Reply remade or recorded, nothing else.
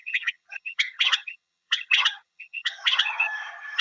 remade